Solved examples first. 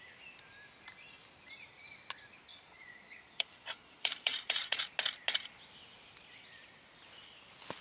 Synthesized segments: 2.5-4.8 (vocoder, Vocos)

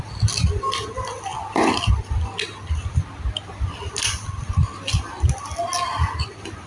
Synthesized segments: none

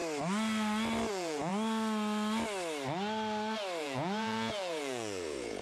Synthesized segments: 1.1-1.5 (vocoder, Vocos); 3.8-5.6

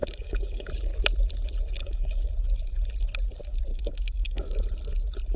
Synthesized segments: 0.0-0.7 (codec, DAC); 1.8-2.3; 3.7-4.4

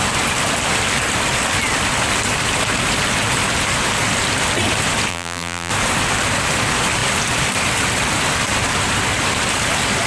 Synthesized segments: 5.1-5.7 (vocoder, BigVGAN v2)